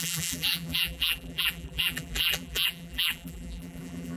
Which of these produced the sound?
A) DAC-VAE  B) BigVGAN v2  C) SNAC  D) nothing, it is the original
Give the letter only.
B